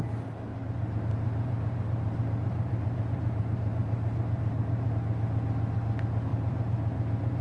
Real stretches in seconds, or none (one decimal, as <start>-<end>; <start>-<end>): 0.0-0.5; 4.9-6.3